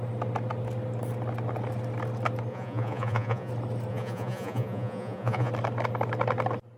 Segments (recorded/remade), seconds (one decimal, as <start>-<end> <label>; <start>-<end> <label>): 0.0-2.5 recorded; 2.5-3.5 remade; 3.5-3.9 recorded; 3.9-5.5 remade; 5.5-6.8 recorded